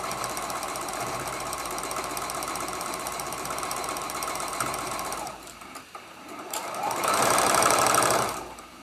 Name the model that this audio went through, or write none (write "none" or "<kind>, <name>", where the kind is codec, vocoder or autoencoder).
vocoder, BigVGAN v2